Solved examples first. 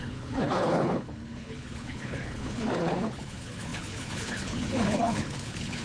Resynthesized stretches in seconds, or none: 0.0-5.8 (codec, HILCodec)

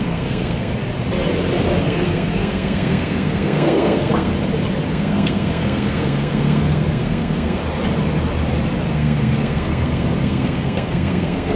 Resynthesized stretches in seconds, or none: 0.0-0.7 (codec, SNAC); 1.8-4.3; 4.9-7.6; 8.9-11.6

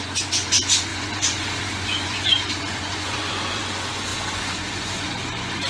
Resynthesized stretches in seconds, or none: 0.0-5.7 (vocoder, Vocos)

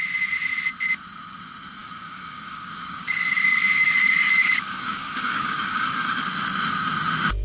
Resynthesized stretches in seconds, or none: 1.8-6.2 (codec, DAC)

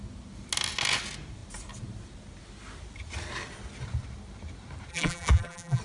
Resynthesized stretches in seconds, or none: 4.9-5.8 (vocoder, BigVGAN v2)

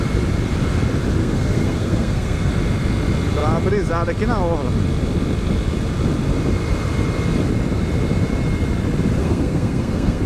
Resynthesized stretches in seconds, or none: 1.2-2.5 (codec, SNAC); 9.2-10.3

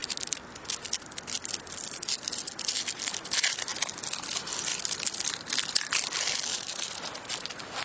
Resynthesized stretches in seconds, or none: none